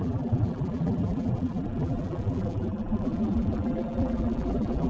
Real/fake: fake